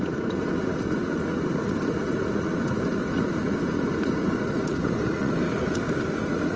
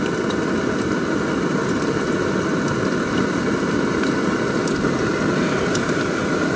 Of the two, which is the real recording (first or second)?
second